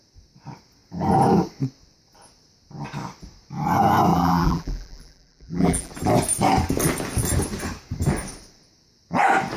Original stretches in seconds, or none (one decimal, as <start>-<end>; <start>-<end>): 0.0-4.1; 5.9-9.6